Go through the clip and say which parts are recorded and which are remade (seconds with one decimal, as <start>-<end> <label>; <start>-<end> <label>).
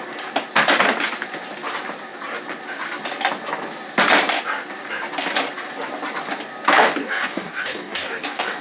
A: 0.0-7.0 recorded; 7.0-8.6 remade